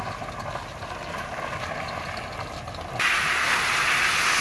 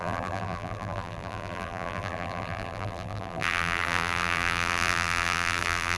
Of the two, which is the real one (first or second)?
first